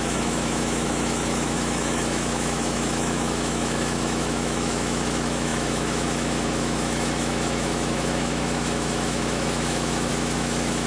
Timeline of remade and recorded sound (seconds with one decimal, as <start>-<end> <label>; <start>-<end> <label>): 0.0-10.9 remade